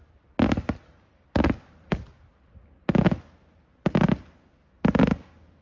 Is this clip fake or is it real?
real